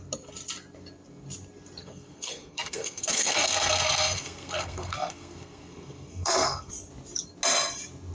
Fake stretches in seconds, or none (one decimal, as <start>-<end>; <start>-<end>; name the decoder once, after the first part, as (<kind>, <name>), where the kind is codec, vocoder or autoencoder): 1.8-6.7 (codec, SNAC)